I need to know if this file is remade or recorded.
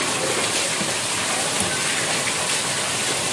recorded